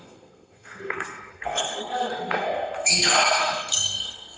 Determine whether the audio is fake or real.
fake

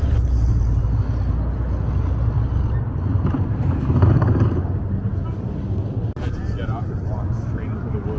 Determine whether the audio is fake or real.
real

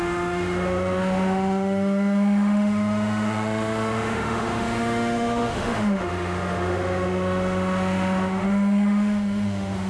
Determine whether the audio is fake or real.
fake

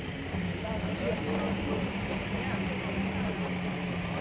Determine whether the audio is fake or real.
real